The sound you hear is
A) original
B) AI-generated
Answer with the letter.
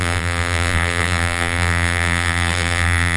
B